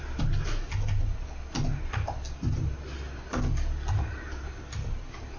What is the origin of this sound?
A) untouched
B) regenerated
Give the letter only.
A